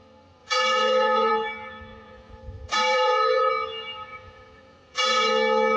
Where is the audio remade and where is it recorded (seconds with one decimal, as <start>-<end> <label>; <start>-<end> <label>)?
0.0-0.4 recorded; 0.4-1.3 remade; 1.3-1.9 recorded; 1.9-3.5 remade; 3.5-4.1 recorded; 4.1-5.3 remade; 5.3-5.8 recorded